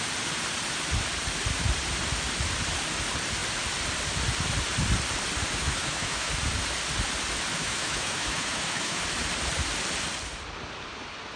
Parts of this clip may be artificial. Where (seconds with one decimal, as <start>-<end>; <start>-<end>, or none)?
5.6-6.3; 7.6-9.0